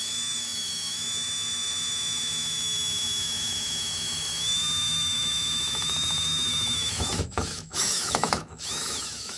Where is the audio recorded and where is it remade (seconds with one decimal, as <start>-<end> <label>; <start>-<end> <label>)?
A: 0.0-9.4 remade